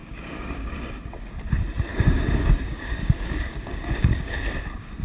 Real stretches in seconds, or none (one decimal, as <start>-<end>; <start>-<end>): 0.7-1.9; 4.3-5.0